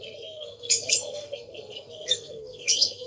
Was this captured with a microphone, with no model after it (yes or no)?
no